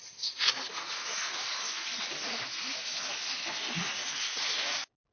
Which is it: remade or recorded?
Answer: recorded